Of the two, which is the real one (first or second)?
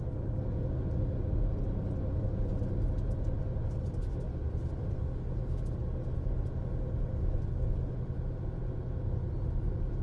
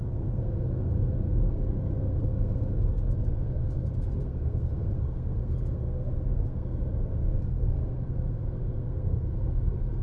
first